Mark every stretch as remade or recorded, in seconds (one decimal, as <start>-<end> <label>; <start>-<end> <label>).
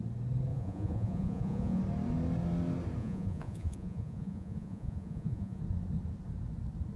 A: 0.0-0.5 recorded; 0.5-1.8 remade; 1.8-3.0 recorded; 3.0-5.6 remade; 5.6-7.0 recorded